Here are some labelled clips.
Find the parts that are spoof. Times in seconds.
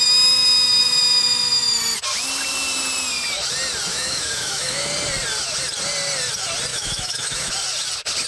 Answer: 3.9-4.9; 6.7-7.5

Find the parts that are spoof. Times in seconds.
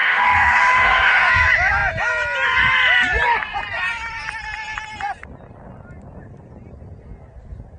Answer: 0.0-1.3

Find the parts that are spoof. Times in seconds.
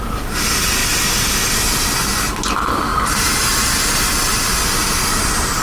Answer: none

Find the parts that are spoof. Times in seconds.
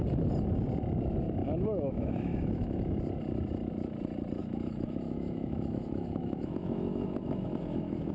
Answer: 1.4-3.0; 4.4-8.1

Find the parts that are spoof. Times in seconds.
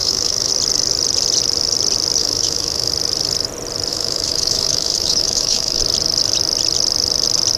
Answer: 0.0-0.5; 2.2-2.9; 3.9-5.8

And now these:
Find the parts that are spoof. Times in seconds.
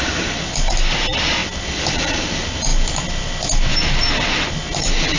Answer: none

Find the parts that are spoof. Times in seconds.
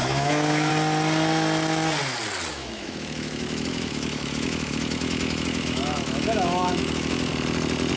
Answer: 0.0-0.7; 2.5-7.3